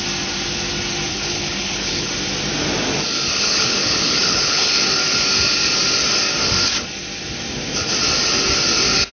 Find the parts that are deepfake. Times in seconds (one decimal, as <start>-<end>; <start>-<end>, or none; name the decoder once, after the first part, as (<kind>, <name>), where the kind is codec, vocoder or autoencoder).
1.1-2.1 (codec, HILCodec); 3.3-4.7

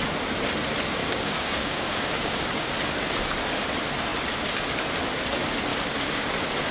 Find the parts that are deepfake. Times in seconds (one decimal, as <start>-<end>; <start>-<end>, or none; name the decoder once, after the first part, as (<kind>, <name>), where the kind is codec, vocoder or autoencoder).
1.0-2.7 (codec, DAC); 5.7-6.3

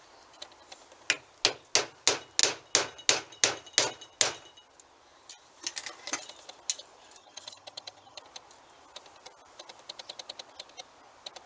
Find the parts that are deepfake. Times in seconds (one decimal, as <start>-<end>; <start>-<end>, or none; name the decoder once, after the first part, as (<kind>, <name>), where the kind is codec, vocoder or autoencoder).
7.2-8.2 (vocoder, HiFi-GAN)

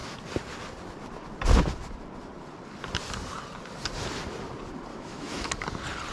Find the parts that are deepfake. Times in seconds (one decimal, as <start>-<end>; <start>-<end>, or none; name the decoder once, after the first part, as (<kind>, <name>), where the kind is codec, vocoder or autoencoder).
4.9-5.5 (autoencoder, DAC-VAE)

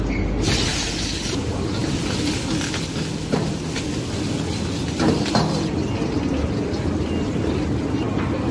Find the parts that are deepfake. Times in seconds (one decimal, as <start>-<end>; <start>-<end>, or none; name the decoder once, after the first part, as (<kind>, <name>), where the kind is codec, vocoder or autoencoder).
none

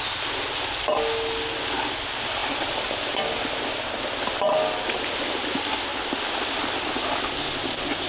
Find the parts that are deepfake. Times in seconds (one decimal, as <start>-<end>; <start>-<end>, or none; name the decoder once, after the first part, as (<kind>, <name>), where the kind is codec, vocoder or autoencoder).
2.4-3.3 (vocoder, BigVGAN v2)